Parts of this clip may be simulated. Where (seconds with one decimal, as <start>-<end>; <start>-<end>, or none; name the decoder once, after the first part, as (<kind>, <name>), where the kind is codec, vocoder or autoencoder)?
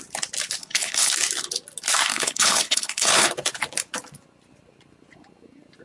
0.6-1.1 (codec, HILCodec); 2.1-3.3